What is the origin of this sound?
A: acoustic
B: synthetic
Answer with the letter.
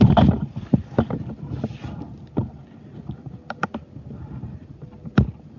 A